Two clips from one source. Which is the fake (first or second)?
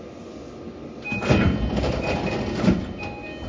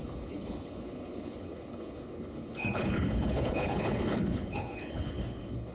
second